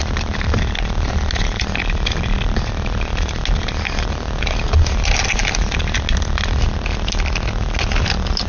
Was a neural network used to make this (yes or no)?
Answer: no